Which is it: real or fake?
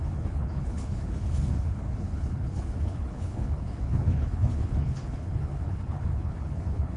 fake